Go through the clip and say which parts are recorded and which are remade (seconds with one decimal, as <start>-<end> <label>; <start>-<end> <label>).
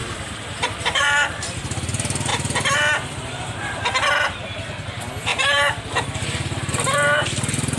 0.0-1.3 remade; 1.3-5.3 recorded; 5.3-7.8 remade